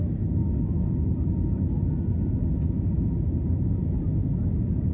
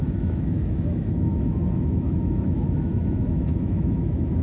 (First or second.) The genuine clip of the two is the first